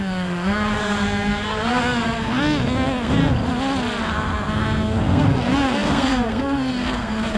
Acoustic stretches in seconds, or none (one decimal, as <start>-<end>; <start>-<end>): 3.2-4.0